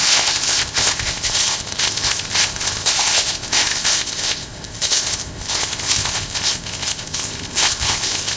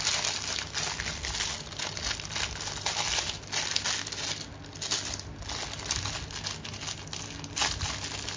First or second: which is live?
second